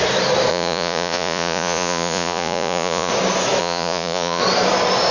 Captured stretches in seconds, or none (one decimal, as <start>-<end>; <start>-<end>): 0.0-0.5; 3.1-3.6; 4.4-5.1